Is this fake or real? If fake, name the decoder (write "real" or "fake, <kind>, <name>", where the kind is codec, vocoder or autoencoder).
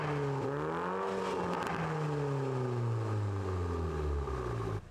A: real